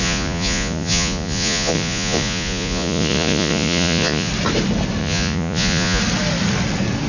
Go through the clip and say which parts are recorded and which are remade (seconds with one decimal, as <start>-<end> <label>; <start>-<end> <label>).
0.0-4.3 remade; 4.3-5.0 recorded; 5.0-6.0 remade; 6.0-7.1 recorded